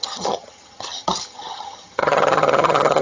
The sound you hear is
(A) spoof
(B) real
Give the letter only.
A